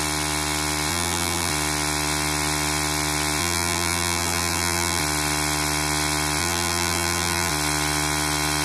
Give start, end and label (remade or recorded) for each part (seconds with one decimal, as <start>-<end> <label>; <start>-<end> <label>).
0.0-0.9 recorded; 0.9-1.5 remade; 1.5-3.4 recorded; 3.4-5.0 remade; 5.0-6.4 recorded; 6.4-7.5 remade; 7.5-8.6 recorded